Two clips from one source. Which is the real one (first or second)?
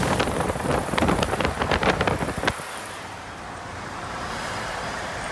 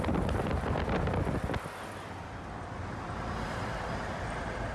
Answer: second